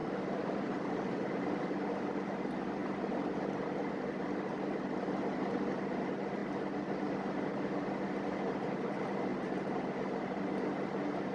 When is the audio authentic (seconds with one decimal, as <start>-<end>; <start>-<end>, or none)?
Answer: 1.6-9.3; 10.4-11.3

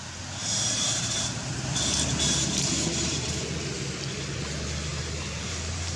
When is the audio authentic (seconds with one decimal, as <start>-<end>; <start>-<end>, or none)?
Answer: 0.0-0.4; 3.3-4.9

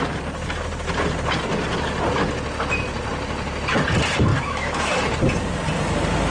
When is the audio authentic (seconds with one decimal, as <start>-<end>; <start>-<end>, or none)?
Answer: 0.0-4.3; 5.0-6.3

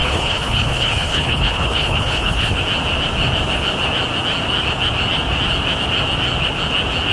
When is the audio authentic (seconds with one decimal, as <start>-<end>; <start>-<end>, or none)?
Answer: 2.6-7.1

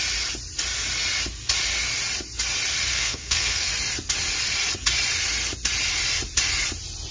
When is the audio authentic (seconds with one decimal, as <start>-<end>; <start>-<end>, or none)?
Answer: 0.0-2.9; 3.7-7.1

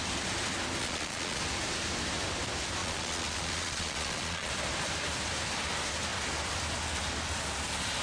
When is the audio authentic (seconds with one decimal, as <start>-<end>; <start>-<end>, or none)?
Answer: 0.0-0.8; 1.4-2.8; 4.5-8.0

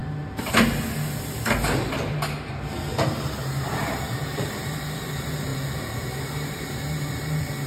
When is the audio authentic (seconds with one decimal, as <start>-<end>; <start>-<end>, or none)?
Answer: 0.0-3.5